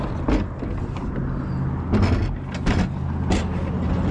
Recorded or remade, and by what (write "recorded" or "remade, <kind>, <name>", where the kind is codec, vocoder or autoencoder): recorded